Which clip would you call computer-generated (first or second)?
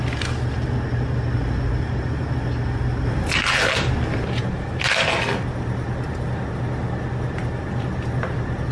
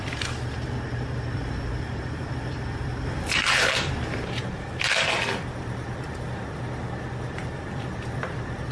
second